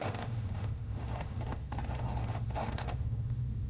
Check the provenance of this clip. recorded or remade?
remade